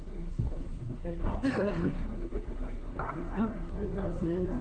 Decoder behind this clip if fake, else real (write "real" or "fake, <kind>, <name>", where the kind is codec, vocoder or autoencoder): fake, codec, SNAC